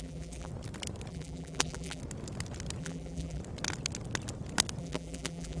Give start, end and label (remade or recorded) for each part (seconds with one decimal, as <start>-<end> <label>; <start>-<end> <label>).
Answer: 0.0-0.5 remade; 0.5-1.1 recorded; 1.1-2.0 remade; 2.0-2.8 recorded; 2.8-3.4 remade; 3.4-4.8 recorded; 4.8-5.6 remade